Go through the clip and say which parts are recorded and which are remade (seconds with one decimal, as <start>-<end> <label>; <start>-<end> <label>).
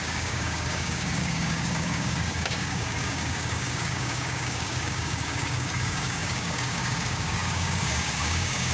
0.0-8.7 remade